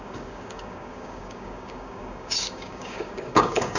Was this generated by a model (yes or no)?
yes